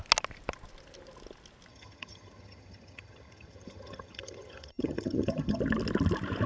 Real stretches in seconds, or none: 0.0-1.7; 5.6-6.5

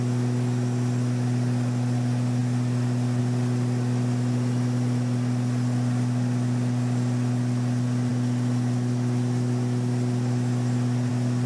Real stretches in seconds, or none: 0.0-11.5

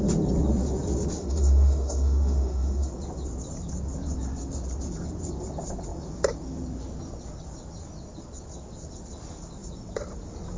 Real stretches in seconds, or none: 0.0-1.2; 2.9-10.6